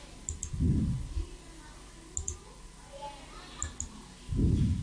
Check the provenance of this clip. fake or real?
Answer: real